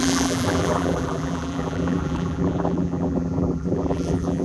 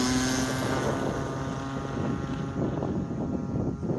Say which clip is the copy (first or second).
first